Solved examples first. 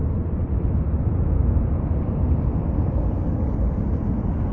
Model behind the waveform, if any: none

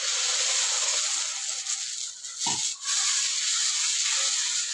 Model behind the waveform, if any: none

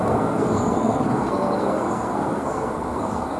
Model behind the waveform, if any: codec, SNAC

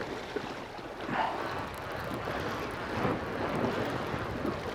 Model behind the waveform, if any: none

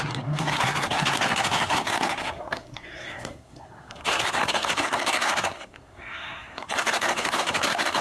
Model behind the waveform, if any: codec, SNAC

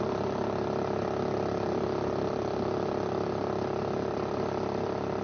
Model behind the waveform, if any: none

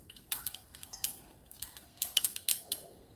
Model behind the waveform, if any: codec, SNAC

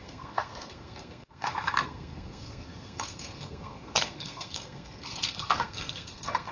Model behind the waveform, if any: codec, SNAC